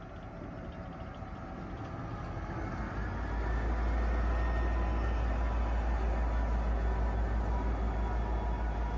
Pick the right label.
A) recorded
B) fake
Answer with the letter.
A